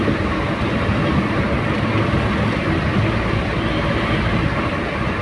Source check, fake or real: real